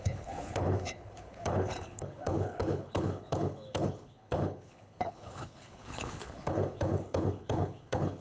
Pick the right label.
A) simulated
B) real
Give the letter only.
A